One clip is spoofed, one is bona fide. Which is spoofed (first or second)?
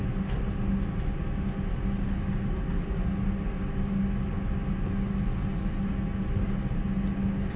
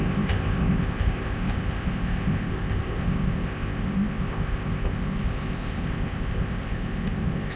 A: second